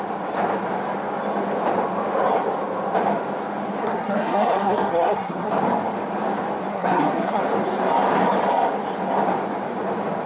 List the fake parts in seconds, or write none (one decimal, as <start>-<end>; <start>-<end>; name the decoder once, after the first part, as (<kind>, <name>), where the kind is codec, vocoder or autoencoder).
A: 3.8-5.5 (codec, SNAC); 6.7-7.4